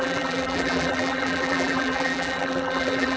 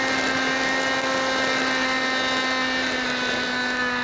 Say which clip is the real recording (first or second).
second